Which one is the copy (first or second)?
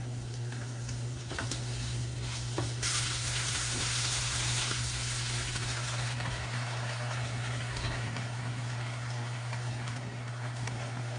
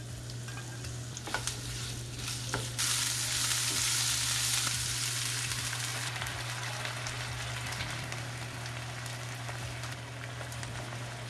first